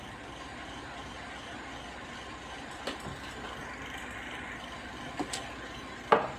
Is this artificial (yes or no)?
no